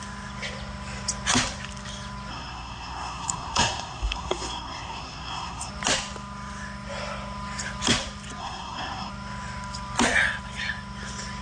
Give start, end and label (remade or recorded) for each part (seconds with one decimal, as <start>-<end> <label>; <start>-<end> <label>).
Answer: 0.0-2.3 recorded; 2.3-5.7 remade; 5.7-8.4 recorded; 8.4-9.1 remade; 9.1-11.4 recorded